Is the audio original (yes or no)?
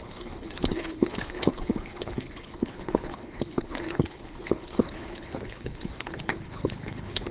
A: no